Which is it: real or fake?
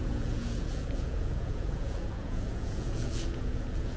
fake